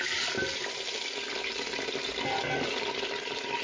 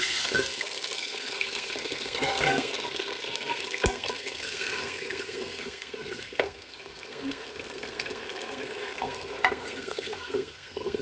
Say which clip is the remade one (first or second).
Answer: second